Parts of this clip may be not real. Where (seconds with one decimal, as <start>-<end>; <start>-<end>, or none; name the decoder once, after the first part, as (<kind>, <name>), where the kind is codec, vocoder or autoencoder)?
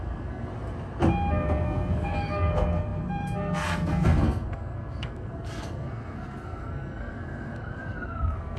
0.0-0.5 (codec, SNAC); 1.3-8.6